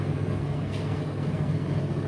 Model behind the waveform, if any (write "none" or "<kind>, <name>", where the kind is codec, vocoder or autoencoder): codec, SNAC